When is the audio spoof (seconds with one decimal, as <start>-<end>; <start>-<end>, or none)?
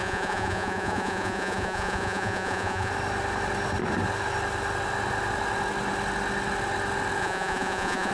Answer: 0.0-2.9; 7.2-8.1